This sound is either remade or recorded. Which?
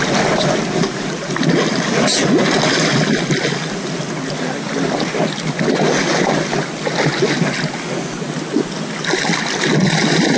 recorded